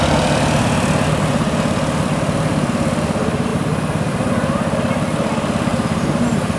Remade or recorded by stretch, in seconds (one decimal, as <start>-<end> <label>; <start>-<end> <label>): 0.0-5.7 recorded; 5.7-6.6 remade